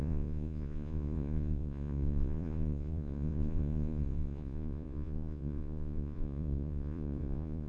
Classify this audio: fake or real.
fake